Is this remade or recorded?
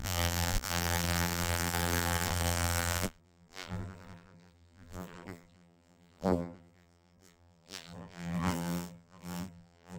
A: remade